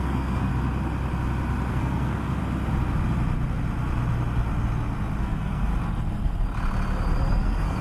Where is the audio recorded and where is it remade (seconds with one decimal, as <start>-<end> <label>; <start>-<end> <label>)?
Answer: 0.0-0.5 remade; 0.5-1.7 recorded; 1.7-2.4 remade; 2.4-5.2 recorded; 5.2-5.7 remade; 5.7-7.3 recorded; 7.3-7.8 remade